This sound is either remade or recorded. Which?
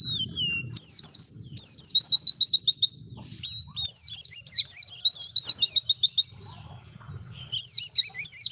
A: recorded